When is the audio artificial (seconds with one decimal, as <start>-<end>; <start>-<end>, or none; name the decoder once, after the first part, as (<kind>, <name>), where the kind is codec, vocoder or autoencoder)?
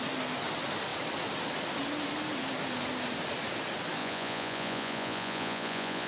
4.0-6.1 (vocoder, Vocos)